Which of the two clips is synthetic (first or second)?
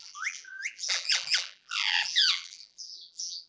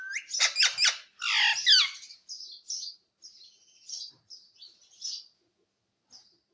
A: first